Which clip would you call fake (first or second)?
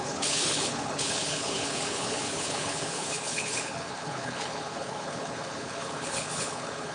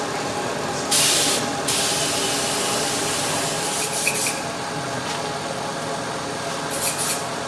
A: first